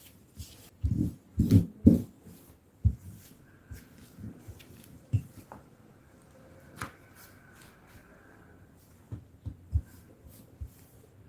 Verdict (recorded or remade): recorded